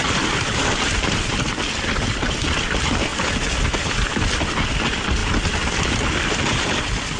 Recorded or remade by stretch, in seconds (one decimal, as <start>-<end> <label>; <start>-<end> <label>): 0.0-7.2 recorded